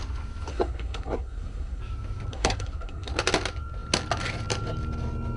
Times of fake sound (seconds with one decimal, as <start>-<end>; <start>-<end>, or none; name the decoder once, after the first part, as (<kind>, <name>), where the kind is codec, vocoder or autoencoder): 0.5-1.8 (codec, SNAC); 2.3-3.1